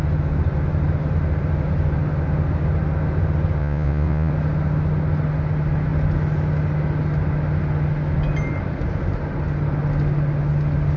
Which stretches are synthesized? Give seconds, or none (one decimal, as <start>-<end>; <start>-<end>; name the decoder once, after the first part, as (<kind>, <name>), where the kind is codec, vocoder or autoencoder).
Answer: 3.6-4.3 (vocoder, Vocos)